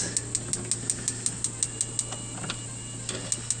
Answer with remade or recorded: recorded